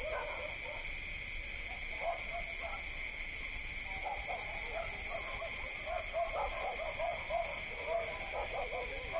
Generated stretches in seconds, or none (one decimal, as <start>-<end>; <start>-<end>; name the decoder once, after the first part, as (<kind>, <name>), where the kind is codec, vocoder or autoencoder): none